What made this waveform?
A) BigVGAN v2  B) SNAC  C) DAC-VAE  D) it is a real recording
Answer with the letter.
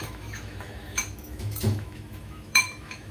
C